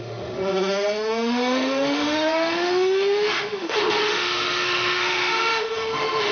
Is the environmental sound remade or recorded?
remade